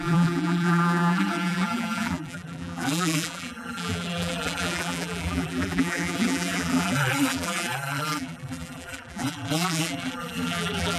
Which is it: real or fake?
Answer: fake